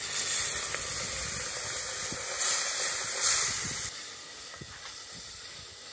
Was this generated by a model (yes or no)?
no